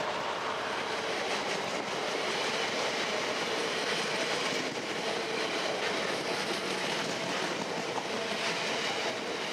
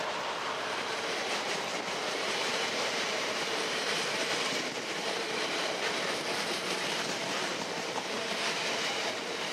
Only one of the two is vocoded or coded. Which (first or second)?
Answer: second